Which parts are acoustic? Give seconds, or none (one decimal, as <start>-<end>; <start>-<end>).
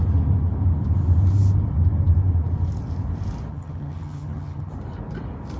0.0-3.5; 4.7-5.6